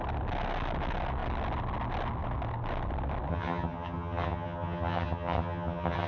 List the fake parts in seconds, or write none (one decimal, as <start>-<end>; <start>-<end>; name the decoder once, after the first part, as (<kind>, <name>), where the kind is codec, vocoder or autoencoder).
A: 3.3-6.1 (vocoder, HiFi-GAN)